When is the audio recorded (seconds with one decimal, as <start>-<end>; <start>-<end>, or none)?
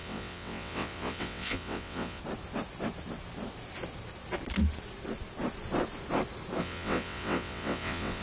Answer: 2.2-6.6